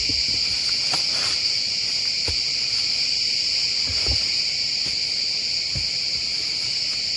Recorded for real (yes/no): yes